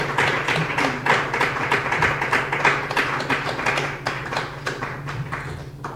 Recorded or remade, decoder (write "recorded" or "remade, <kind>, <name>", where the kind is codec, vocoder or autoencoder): recorded